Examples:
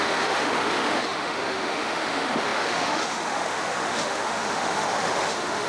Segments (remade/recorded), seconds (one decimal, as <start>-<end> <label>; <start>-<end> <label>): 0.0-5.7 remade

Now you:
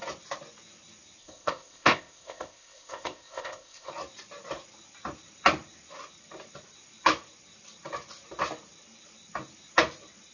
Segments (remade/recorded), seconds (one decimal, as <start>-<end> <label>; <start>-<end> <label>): 0.0-1.2 recorded; 1.2-3.9 remade; 3.9-10.3 recorded

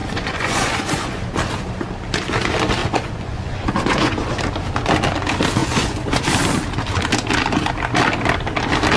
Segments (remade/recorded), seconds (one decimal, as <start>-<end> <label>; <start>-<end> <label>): 0.0-1.2 remade; 1.2-2.8 recorded; 2.8-4.4 remade; 4.4-5.6 recorded; 5.6-6.2 remade; 6.2-9.0 recorded

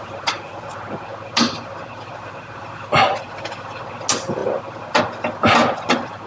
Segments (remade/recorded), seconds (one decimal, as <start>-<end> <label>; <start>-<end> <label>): 0.0-6.3 recorded